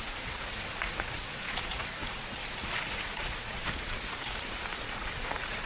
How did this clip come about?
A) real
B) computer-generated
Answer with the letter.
B